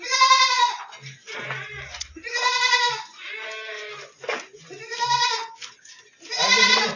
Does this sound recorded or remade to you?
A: recorded